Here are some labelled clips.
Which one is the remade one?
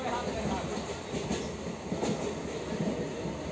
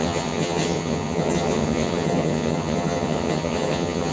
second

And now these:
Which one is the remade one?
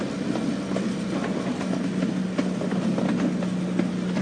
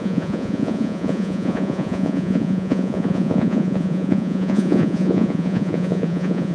second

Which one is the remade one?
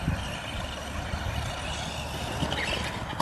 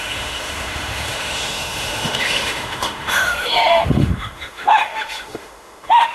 second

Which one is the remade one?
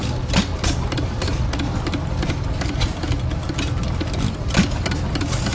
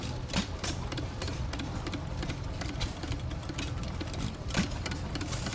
second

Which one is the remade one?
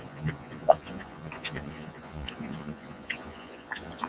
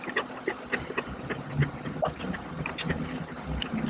first